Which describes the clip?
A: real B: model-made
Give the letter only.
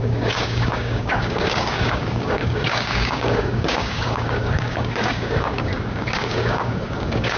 B